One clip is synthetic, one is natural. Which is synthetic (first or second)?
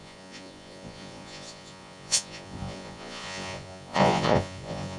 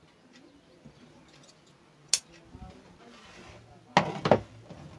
first